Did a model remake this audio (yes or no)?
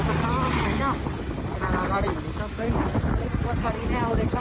no